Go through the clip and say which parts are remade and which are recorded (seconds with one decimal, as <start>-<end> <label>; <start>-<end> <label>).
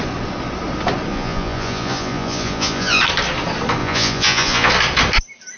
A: 0.0-1.1 recorded; 1.1-3.0 remade; 3.0-3.8 recorded; 3.8-4.7 remade; 4.7-5.6 recorded